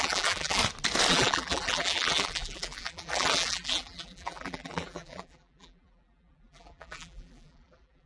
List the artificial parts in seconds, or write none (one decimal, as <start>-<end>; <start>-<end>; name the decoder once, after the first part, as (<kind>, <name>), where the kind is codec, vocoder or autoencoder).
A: 0.0-0.6 (vocoder, BigVGAN v2); 1.1-8.1